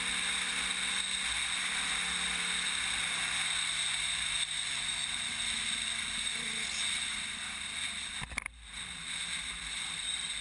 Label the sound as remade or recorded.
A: recorded